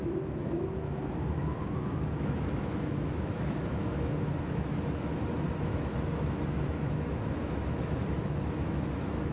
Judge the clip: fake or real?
fake